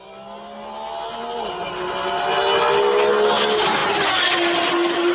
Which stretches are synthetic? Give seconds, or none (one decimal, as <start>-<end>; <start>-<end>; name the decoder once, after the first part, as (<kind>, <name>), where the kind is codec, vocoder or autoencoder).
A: none